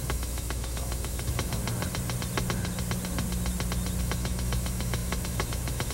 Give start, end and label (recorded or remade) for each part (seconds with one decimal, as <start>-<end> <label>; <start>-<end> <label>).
0.0-1.6 remade; 1.6-4.0 recorded; 4.0-5.9 remade